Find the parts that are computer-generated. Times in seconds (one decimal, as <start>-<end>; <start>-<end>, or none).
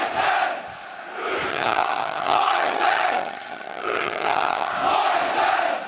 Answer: 1.5-4.7